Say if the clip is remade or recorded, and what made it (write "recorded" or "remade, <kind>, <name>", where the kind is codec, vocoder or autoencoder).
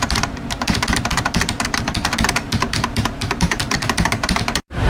remade, vocoder, BigVGAN v2